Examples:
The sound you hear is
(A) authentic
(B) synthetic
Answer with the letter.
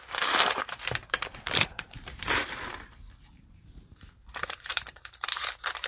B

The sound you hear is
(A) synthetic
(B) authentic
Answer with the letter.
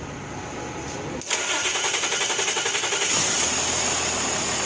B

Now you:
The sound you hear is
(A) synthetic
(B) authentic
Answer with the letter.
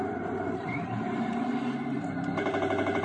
A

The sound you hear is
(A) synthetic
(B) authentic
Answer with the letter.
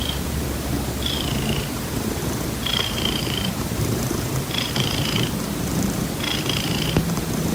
A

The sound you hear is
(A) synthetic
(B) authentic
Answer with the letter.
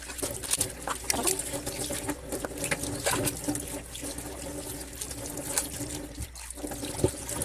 B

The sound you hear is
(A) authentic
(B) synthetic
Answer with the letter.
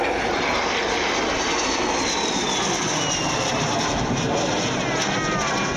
A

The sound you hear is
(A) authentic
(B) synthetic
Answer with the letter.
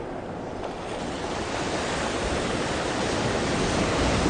A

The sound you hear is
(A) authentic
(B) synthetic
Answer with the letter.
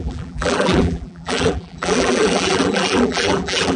B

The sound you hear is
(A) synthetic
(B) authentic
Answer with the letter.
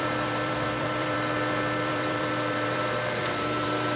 A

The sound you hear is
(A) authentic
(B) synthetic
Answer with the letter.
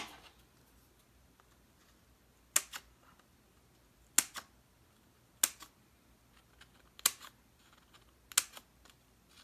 A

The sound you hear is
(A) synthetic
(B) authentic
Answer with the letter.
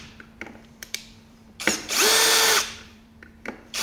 A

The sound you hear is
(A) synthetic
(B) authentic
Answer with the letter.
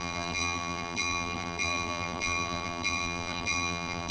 A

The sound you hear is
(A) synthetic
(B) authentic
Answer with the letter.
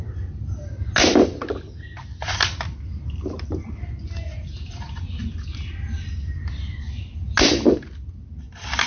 B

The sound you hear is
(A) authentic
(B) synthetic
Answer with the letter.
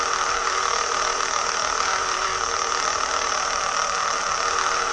B